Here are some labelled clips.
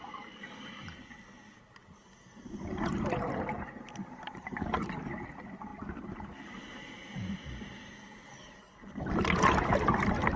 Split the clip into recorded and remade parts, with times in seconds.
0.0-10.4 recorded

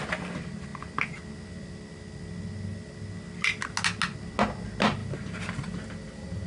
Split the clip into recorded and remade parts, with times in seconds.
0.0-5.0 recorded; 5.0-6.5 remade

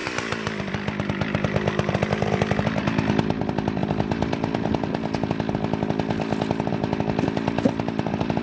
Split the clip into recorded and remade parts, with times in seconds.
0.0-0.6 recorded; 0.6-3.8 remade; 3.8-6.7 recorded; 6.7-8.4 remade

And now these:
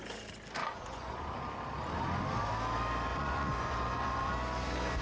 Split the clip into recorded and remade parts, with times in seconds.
0.0-0.6 recorded; 0.6-1.3 remade; 1.3-3.1 recorded; 3.1-4.3 remade; 4.3-5.0 recorded

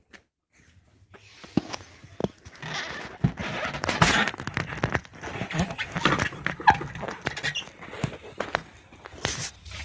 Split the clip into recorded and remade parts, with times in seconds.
0.0-2.2 recorded; 2.2-3.0 remade; 3.0-9.8 recorded